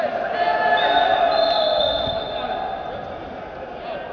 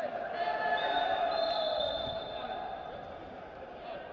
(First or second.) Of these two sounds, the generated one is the second